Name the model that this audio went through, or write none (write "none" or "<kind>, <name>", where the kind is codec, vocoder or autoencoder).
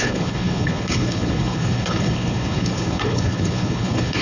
codec, HILCodec